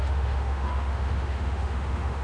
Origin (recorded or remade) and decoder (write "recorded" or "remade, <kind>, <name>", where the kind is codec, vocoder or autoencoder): remade, autoencoder, DAC-VAE